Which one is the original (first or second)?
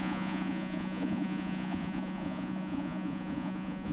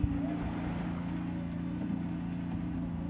second